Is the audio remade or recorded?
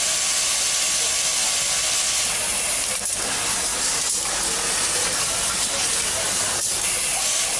recorded